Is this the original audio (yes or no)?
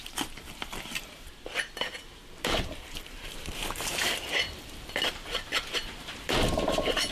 no